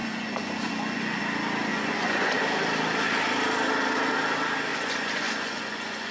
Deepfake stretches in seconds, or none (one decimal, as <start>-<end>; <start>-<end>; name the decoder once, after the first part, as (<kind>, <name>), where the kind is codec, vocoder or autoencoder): 0.0-1.2 (vocoder, Vocos); 1.7-2.4; 4.7-6.1